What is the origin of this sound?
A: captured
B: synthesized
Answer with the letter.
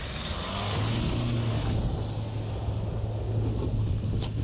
A